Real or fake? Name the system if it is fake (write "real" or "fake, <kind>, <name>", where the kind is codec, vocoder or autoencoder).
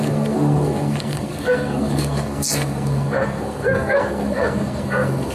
fake, codec, SNAC